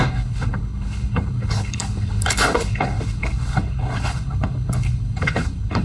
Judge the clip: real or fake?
fake